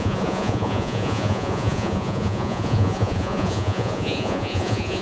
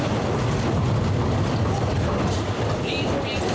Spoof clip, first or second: first